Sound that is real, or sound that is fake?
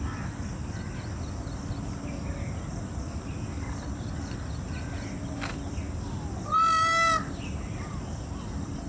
real